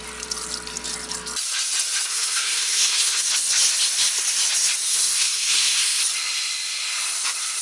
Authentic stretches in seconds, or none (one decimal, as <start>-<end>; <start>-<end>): 0.0-2.1; 3.2-4.9; 6.0-7.6